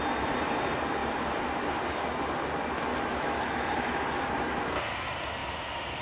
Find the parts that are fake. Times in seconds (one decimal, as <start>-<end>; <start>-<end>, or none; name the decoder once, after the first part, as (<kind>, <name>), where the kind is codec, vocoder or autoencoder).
2.9-4.3 (autoencoder, DAC-VAE)